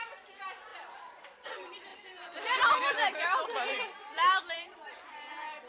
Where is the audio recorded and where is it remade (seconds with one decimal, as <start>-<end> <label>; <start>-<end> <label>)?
0.0-0.7 recorded; 0.7-1.5 remade; 1.5-1.9 recorded; 1.9-5.3 remade; 5.3-5.7 recorded